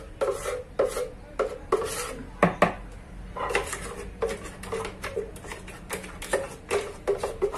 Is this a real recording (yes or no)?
yes